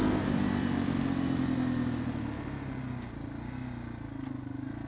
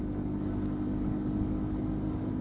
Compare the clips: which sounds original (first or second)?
first